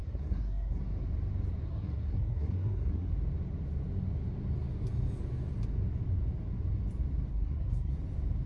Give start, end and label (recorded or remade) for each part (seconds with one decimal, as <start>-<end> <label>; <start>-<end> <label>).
0.0-0.8 remade; 0.8-1.7 recorded; 1.7-3.1 remade; 3.1-7.3 recorded; 7.3-7.9 remade; 7.9-8.5 recorded